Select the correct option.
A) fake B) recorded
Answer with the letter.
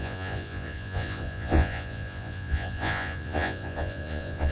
A